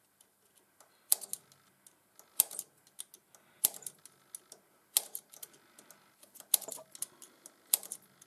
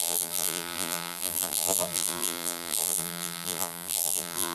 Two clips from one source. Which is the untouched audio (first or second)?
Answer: first